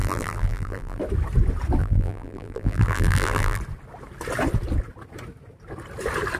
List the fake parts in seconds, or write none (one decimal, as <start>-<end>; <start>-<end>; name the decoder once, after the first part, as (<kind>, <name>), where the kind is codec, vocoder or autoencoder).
0.0-1.0 (vocoder, BigVGAN v2); 1.8-3.6